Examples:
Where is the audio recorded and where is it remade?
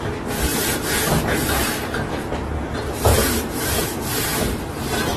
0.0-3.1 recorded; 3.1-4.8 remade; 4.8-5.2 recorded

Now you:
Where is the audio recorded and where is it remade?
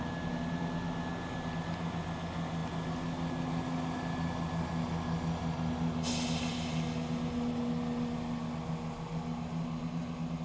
0.0-10.4 recorded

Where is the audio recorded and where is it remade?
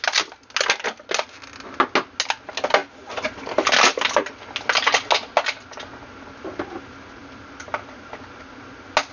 0.0-9.1 recorded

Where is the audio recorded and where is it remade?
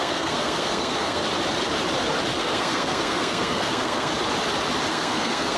0.0-1.2 remade; 1.2-2.4 recorded; 2.4-4.1 remade; 4.1-4.9 recorded; 4.9-5.6 remade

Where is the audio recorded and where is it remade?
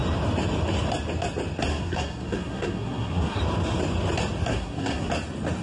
0.0-1.7 recorded; 1.7-3.4 remade; 3.4-4.5 recorded; 4.5-5.1 remade; 5.1-5.6 recorded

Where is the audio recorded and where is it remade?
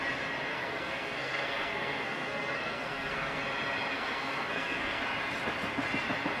0.0-0.5 recorded; 0.5-3.4 remade; 3.4-3.9 recorded; 3.9-5.0 remade; 5.0-6.4 recorded